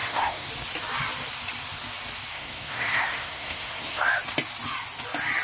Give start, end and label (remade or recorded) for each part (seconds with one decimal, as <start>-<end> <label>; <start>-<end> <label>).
0.0-0.5 remade; 0.5-2.3 recorded; 2.3-4.1 remade; 4.1-5.4 recorded